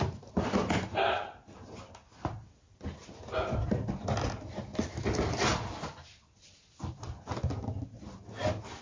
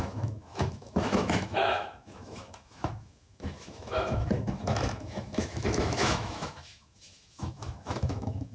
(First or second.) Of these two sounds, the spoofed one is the second